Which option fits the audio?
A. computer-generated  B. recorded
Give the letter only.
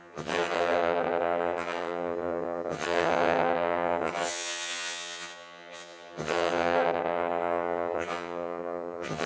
A